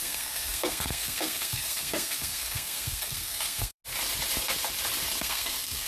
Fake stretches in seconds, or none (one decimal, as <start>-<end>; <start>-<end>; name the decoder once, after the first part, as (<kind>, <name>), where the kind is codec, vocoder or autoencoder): 0.0-3.8 (codec, SNAC); 5.2-5.9